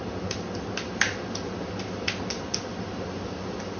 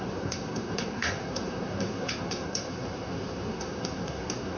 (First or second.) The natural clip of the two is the first